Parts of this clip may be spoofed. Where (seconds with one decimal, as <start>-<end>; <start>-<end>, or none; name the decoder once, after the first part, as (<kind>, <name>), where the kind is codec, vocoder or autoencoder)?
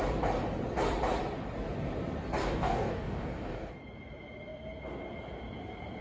2.4-3.7 (codec, DAC)